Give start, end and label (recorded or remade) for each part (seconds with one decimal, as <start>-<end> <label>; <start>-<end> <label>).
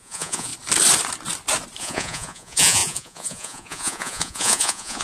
0.0-0.5 remade; 0.5-1.8 recorded; 1.8-5.0 remade